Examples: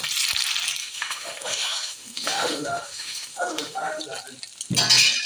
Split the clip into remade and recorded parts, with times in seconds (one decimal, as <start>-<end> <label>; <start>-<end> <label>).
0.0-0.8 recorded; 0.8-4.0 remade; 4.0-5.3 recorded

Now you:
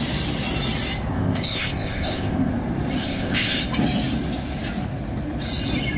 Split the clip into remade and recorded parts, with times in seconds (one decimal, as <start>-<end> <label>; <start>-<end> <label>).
0.0-1.1 recorded; 1.1-2.5 remade; 2.5-3.0 recorded; 3.0-3.6 remade; 3.6-6.0 recorded

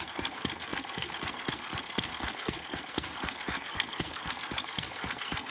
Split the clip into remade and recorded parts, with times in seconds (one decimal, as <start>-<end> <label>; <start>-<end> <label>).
0.0-5.5 remade

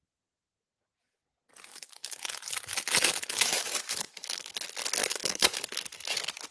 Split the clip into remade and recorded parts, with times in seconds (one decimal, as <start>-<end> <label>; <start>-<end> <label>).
0.0-1.7 recorded; 1.7-2.3 remade; 2.3-3.3 recorded; 3.3-4.5 remade; 4.5-5.0 recorded; 5.0-5.6 remade; 5.6-6.5 recorded

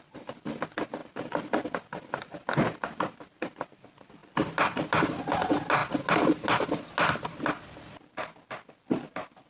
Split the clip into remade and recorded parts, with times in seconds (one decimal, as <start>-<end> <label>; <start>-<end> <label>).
0.0-4.2 recorded; 4.2-5.0 remade; 5.0-9.5 recorded

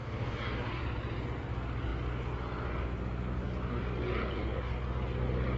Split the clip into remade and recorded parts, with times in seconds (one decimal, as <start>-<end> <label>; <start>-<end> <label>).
0.0-0.8 remade; 0.8-5.6 recorded